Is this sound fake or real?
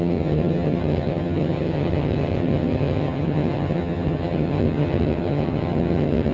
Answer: fake